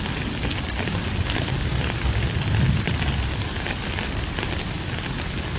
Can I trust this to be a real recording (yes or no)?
yes